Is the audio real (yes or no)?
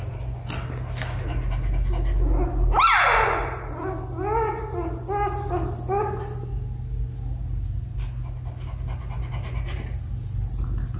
yes